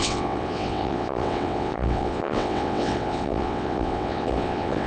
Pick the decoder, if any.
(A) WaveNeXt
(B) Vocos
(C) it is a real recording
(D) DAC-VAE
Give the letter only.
A